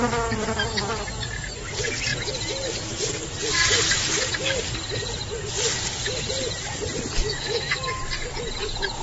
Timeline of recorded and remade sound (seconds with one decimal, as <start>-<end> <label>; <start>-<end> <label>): 0.0-7.2 recorded; 7.2-8.0 remade; 8.0-9.0 recorded